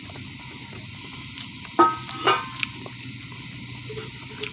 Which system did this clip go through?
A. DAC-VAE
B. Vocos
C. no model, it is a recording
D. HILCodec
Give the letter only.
C